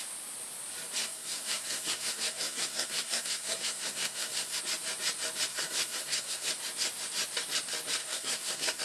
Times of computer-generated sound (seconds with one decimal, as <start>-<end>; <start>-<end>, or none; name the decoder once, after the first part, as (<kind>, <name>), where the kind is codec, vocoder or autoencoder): 1.0-4.6 (codec, SNAC); 5.5-6.5; 8.0-8.8